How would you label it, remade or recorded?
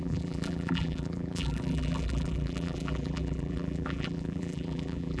remade